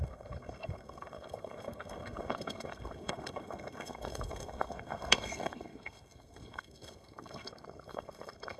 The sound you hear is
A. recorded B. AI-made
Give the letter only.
B